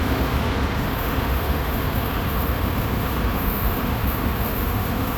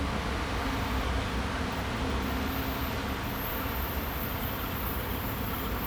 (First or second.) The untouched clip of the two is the second